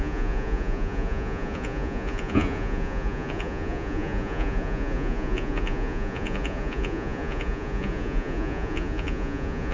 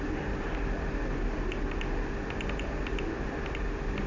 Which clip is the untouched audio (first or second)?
second